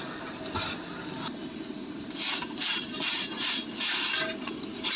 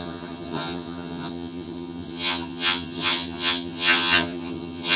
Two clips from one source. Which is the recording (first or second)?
first